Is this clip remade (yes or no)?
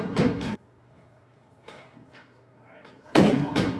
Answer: yes